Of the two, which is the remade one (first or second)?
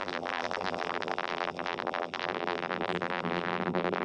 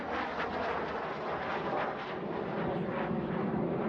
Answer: first